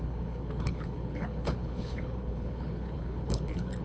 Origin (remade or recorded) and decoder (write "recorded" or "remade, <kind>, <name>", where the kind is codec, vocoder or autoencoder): remade, codec, HILCodec